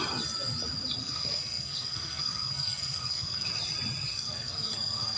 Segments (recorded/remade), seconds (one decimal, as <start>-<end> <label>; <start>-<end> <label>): 0.0-1.0 recorded; 1.0-3.5 remade; 3.5-4.1 recorded; 4.1-5.2 remade

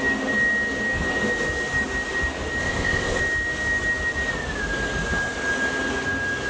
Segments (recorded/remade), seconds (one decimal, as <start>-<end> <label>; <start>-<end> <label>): 0.0-2.6 recorded; 2.6-3.2 remade; 3.2-6.5 recorded

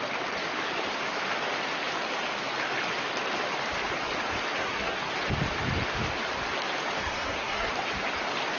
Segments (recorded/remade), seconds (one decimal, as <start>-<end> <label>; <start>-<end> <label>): 0.0-4.6 recorded; 4.6-5.1 remade; 5.1-7.0 recorded; 7.0-7.7 remade; 7.7-8.6 recorded

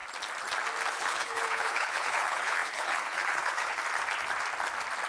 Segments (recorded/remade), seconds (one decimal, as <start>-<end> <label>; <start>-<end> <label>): 0.0-0.9 recorded; 0.9-3.8 remade; 3.8-5.1 recorded

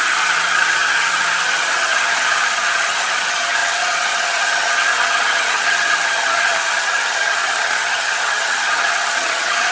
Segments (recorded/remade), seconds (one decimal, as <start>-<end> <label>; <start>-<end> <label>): 0.0-9.7 remade

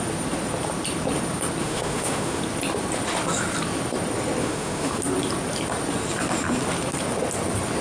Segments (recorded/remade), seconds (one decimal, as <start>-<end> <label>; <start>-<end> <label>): 0.0-1.6 recorded; 1.6-2.4 remade; 2.4-4.4 recorded; 4.4-5.0 remade; 5.0-7.8 recorded

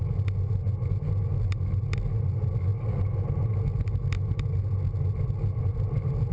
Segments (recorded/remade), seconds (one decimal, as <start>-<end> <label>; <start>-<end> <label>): 0.0-6.3 recorded